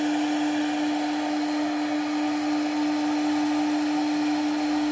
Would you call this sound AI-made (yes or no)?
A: no